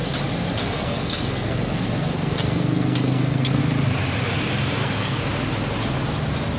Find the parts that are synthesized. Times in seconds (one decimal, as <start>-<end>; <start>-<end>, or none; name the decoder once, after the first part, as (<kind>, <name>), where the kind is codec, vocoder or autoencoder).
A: 0.6-3.6 (codec, SNAC); 4.8-5.3